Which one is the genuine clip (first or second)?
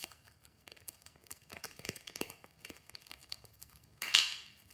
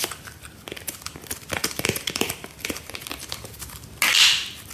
second